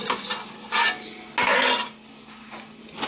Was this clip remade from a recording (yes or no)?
no